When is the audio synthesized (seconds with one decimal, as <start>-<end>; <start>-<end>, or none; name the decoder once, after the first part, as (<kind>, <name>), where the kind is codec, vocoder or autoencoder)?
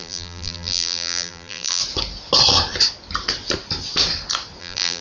0.0-1.8 (vocoder, BigVGAN v2); 4.6-5.0